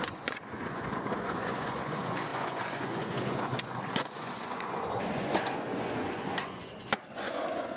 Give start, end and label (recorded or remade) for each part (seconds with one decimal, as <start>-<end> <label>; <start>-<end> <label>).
0.0-7.8 remade